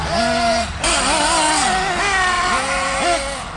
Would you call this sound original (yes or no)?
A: yes